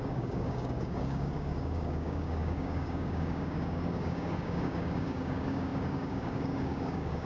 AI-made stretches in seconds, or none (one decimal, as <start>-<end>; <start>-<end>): 0.0-7.2